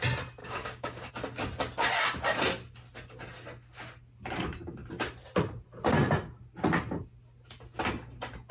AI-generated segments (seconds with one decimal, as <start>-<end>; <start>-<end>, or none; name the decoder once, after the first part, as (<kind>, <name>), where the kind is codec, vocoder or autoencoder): 0.4-1.1 (codec, DAC)